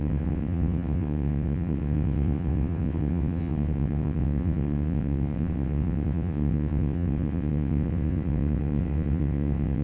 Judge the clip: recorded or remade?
remade